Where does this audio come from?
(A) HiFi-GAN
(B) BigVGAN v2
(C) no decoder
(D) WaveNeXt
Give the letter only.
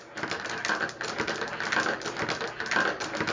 C